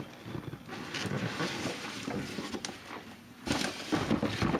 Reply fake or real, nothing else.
real